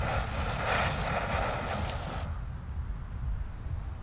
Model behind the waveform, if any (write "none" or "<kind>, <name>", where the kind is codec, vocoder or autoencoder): none